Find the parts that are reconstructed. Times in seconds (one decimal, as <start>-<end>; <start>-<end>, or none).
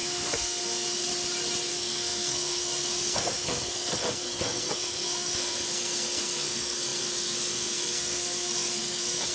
0.0-1.1; 1.7-9.3